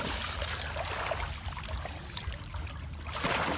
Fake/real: real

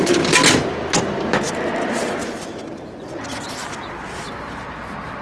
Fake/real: real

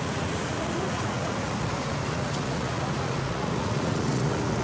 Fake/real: fake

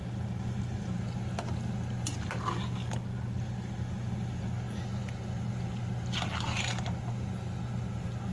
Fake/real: real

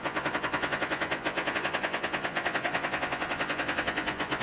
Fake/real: fake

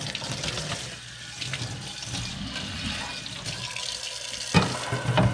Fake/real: real